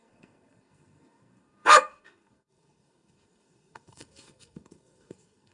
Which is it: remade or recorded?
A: remade